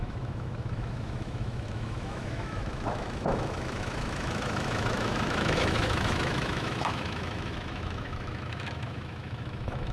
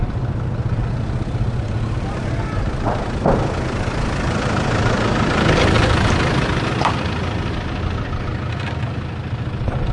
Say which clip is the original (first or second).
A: second